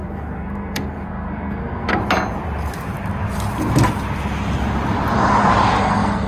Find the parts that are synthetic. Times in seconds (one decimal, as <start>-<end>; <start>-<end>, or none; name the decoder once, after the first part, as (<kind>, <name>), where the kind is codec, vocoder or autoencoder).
0.0-2.0 (codec, SNAC); 5.8-6.3